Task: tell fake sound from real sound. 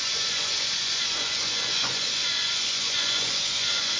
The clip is fake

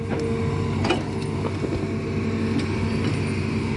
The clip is real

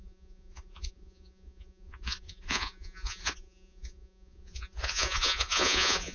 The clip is fake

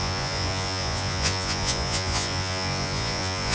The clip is fake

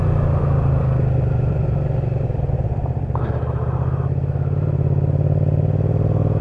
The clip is real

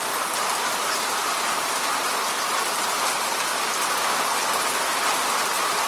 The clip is real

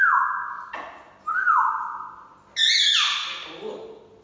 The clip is real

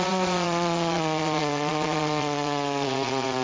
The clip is fake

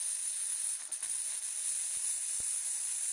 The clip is real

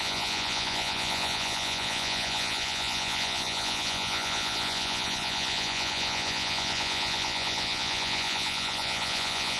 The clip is fake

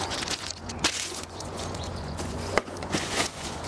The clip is fake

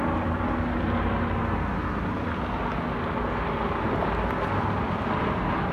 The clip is real